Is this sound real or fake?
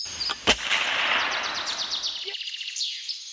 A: real